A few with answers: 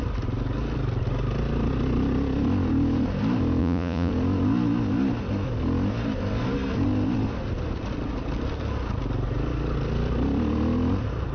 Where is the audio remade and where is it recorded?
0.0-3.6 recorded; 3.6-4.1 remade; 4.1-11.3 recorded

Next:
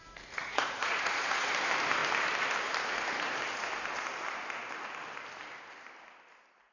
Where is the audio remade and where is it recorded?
0.0-0.4 recorded; 0.4-1.5 remade; 1.5-6.7 recorded

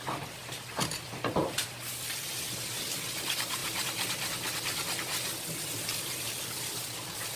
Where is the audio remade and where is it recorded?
0.0-7.4 recorded

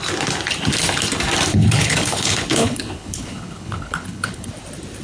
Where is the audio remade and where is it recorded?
0.0-1.5 recorded; 1.5-4.5 remade; 4.5-5.0 recorded